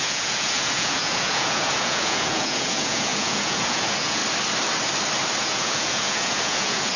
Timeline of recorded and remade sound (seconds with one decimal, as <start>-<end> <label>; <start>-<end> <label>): 0.0-4.2 remade; 4.2-5.4 recorded; 5.4-7.0 remade